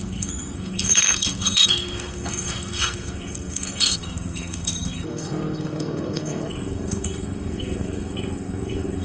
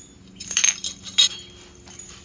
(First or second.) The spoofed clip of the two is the first